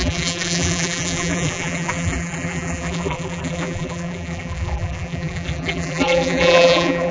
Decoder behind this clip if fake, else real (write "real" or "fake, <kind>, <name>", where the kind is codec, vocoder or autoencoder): fake, vocoder, BigVGAN v2